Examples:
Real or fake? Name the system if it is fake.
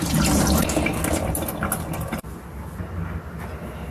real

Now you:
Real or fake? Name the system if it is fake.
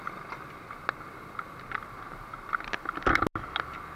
real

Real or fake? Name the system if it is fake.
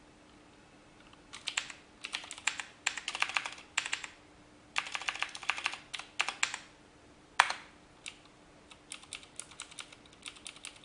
real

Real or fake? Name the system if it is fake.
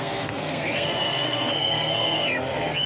fake, codec, SNAC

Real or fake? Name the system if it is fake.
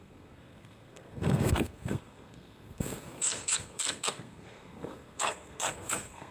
fake, codec, SNAC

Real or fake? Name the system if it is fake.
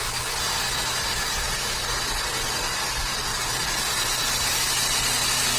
real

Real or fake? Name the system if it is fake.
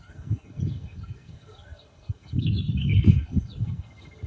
fake, codec, SNAC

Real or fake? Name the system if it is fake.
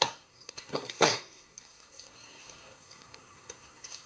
fake, codec, SNAC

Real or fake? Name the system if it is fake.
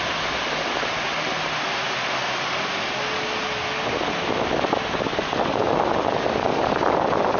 real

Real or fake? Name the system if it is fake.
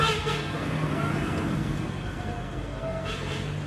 fake, codec, SNAC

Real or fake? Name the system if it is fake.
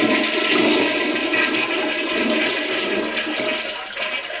real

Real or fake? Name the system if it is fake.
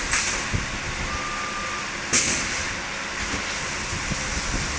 real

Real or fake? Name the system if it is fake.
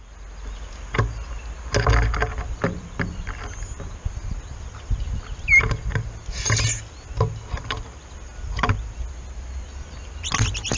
real